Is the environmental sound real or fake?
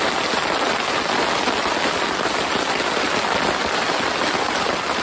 real